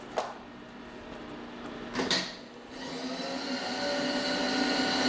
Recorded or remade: recorded